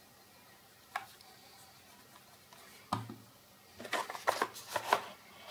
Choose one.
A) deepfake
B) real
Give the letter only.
B